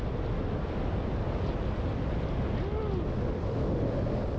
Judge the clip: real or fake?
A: real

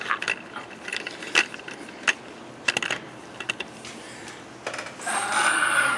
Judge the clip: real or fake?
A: real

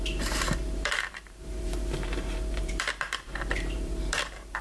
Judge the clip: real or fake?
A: fake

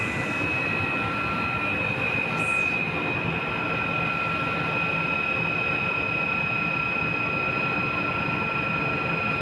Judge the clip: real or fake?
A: real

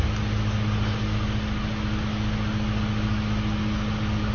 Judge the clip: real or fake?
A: real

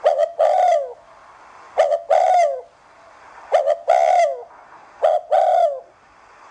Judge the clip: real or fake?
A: real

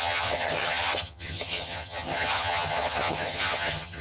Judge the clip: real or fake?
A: fake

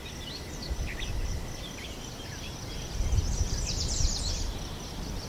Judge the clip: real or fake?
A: fake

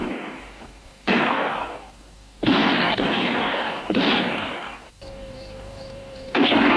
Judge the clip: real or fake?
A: fake